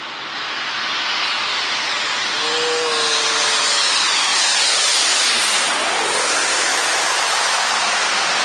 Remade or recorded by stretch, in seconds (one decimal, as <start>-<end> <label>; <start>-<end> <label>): 0.0-6.7 recorded; 6.7-7.7 remade; 7.7-8.4 recorded

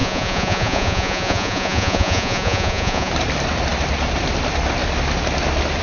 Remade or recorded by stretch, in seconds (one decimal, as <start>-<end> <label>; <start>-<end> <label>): 0.0-3.1 remade; 3.1-5.8 recorded

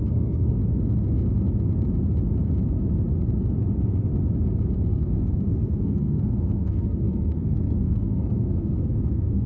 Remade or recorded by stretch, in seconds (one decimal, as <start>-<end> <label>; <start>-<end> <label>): 0.0-0.6 remade; 0.6-4.9 recorded; 4.9-9.5 remade

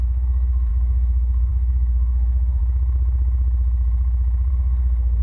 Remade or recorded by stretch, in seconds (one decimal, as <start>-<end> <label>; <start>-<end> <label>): 0.0-2.6 remade; 2.6-4.5 recorded; 4.5-5.2 remade

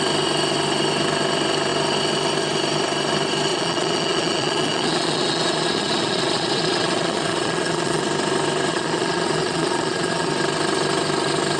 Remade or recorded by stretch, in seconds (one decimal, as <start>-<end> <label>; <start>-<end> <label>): 0.0-3.5 recorded; 3.5-8.0 remade; 8.0-8.7 recorded; 8.7-10.3 remade; 10.3-11.6 recorded

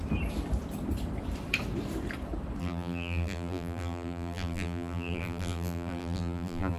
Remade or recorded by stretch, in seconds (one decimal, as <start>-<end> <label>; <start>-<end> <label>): 0.0-2.6 recorded; 2.6-6.8 remade